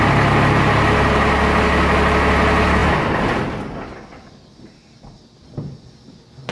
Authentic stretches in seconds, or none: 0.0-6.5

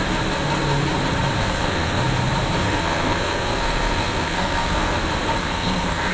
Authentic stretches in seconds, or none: 0.0-1.4; 2.0-2.6; 5.0-5.4

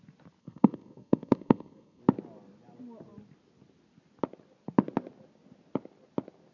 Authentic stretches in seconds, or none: 0.0-0.4; 2.0-6.5

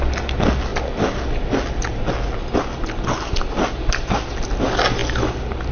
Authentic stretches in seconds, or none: 0.0-5.7

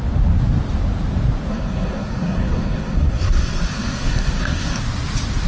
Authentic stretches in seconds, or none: 0.0-1.5; 4.8-5.5

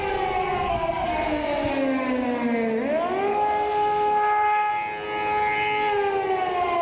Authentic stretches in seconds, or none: 0.0-0.4; 1.7-3.3; 4.7-6.8